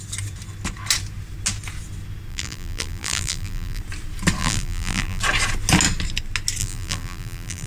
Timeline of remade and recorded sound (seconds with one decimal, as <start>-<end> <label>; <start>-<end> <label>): 0.0-2.3 recorded; 2.3-3.8 remade; 3.8-4.4 recorded; 4.4-5.2 remade; 5.2-6.6 recorded; 6.6-7.7 remade